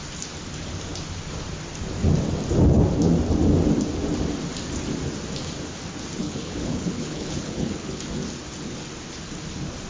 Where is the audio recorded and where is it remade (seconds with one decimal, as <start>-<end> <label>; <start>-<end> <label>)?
0.0-6.2 recorded; 6.2-8.0 remade; 8.0-9.9 recorded

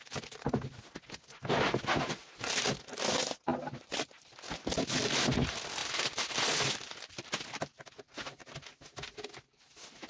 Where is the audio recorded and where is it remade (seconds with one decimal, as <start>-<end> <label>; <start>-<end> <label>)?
0.0-10.1 recorded

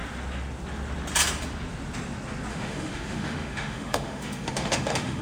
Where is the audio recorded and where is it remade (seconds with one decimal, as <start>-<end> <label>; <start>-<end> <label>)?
0.0-2.5 recorded; 2.5-5.2 remade